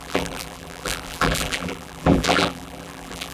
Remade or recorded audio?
remade